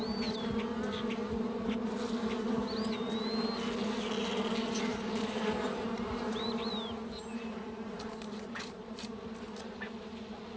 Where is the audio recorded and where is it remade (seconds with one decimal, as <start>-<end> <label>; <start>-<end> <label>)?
0.0-4.9 recorded; 4.9-9.8 remade; 9.8-10.6 recorded